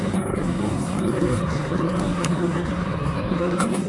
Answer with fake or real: fake